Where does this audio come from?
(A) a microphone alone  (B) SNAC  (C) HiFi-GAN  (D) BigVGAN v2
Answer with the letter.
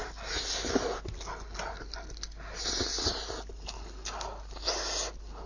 A